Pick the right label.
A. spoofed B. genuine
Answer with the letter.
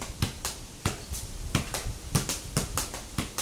B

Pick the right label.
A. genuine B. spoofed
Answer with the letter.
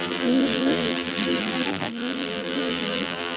B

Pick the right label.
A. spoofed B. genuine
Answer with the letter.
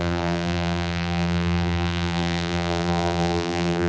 A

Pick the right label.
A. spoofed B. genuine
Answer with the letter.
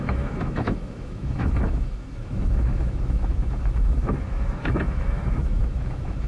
A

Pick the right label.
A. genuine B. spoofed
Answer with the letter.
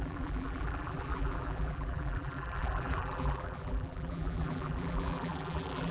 B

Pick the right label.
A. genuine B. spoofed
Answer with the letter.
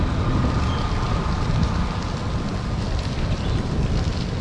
A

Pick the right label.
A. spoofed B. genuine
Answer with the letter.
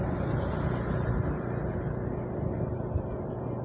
B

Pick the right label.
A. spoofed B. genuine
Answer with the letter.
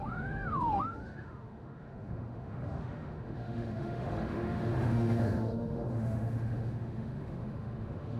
A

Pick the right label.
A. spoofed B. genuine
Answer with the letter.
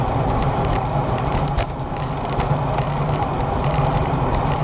A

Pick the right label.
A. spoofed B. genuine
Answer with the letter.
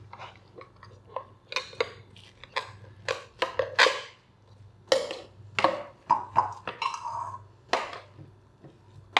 B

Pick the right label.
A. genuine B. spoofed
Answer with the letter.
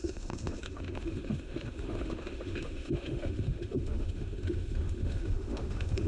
B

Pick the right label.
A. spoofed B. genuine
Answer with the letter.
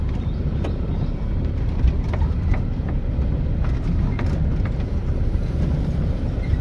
A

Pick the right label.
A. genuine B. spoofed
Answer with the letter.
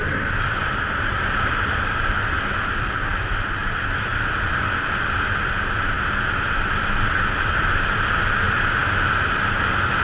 A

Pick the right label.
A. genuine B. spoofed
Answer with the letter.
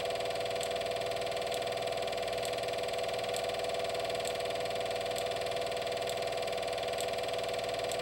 A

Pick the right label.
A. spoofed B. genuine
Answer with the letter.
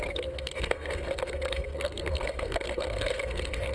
A